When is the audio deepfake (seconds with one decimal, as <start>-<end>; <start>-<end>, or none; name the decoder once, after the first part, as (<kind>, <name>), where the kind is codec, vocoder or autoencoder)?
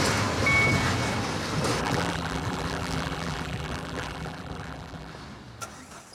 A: 1.8-5.1 (vocoder, BigVGAN v2)